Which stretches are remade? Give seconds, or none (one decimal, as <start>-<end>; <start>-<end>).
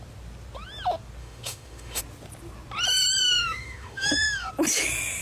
1.2-2.0; 3.2-4.5